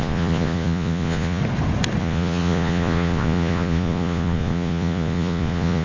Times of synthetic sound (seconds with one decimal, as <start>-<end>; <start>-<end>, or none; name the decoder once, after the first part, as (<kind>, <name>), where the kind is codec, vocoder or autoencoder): 0.0-1.4 (vocoder, Vocos); 2.0-5.8